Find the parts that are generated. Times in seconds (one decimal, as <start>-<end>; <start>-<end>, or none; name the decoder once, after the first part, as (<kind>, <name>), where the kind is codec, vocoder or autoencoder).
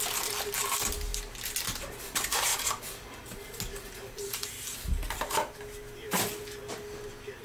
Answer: none